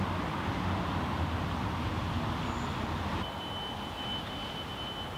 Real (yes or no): yes